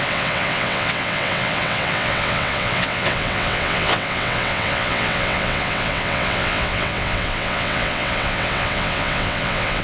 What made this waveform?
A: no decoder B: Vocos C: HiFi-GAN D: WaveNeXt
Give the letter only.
D